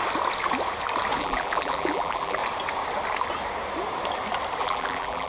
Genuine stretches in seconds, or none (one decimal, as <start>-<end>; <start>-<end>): 0.0-1.2; 2.4-4.6

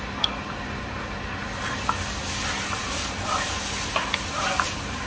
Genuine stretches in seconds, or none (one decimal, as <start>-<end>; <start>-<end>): 0.0-1.4; 2.2-2.8; 3.8-5.1